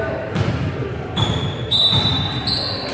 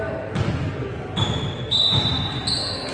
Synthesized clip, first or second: first